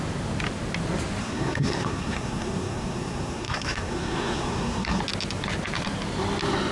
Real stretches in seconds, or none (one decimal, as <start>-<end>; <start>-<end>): 0.0-1.2; 5.0-6.7